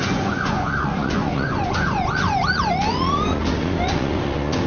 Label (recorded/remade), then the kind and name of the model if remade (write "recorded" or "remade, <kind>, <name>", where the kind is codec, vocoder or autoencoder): remade, vocoder, Vocos